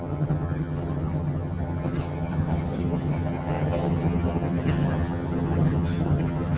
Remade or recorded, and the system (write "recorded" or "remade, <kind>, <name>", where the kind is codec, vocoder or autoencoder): remade, vocoder, HiFi-GAN